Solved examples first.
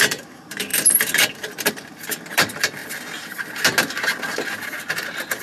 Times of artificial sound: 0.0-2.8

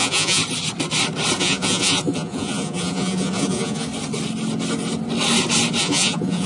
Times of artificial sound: 0.0-0.4; 1.4-3.9; 5.8-6.5

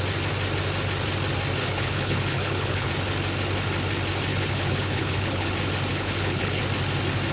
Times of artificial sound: 1.6-2.9; 4.3-5.5; 5.9-6.6

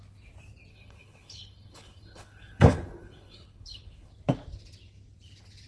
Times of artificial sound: 0.7-4.1

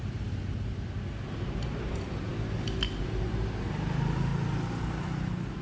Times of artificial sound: 0.0-0.7; 1.3-2.3; 3.0-4.3; 4.9-5.6

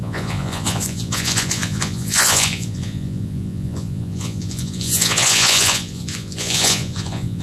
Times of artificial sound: 0.0-7.4

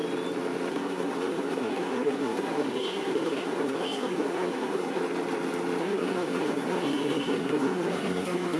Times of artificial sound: 0.7-5.0; 5.8-8.6

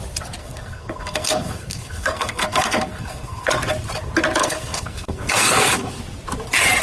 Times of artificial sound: 0.4-3.5; 4.4-6.0